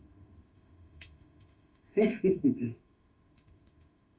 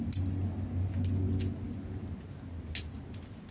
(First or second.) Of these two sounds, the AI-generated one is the first